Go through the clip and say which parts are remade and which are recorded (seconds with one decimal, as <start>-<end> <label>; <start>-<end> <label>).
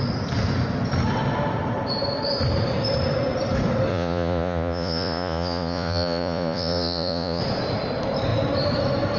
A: 0.0-3.9 recorded; 3.9-7.4 remade; 7.4-9.2 recorded